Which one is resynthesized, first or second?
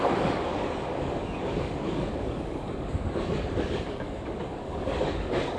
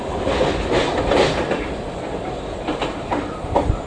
first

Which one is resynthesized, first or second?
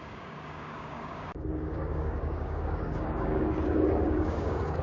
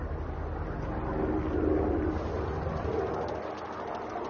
first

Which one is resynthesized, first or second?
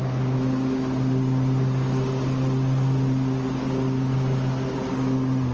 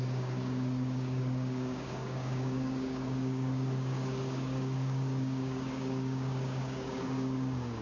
second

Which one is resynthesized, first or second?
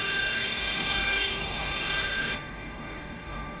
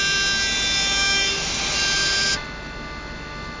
first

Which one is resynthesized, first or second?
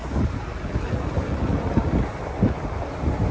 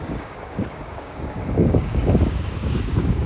second